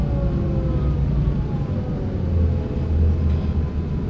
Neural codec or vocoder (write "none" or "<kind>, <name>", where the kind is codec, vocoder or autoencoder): none